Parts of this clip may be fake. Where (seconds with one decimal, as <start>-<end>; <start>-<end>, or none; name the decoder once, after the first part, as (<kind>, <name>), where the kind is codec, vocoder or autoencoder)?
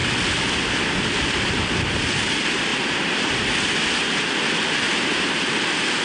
0.0-0.6 (vocoder, BigVGAN v2); 2.7-5.5